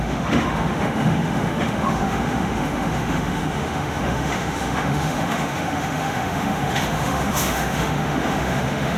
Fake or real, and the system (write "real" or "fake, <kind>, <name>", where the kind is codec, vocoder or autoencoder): fake, autoencoder, DAC-VAE